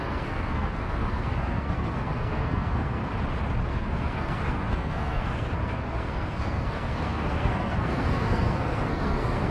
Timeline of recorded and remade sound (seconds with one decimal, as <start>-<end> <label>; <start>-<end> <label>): 0.0-3.0 remade; 3.0-3.7 recorded; 3.7-9.5 remade

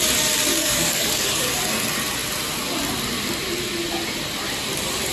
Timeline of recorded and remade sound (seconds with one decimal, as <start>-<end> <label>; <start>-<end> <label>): 0.0-0.5 recorded; 0.5-1.5 remade; 1.5-5.1 recorded

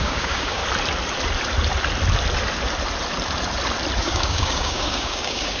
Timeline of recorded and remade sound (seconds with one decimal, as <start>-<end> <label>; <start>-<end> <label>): 0.0-0.6 remade; 0.6-4.0 recorded; 4.0-5.6 remade

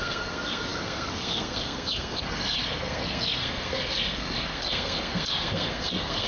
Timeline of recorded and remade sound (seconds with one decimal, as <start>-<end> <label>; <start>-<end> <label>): 0.0-6.3 remade

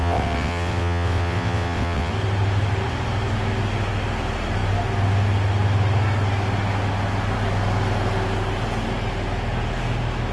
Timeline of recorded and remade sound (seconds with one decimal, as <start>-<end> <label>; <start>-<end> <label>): 0.0-2.1 remade; 2.1-10.3 recorded

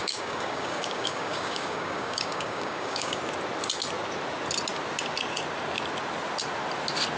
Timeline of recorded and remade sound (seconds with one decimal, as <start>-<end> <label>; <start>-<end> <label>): 0.0-3.2 remade; 3.2-7.2 recorded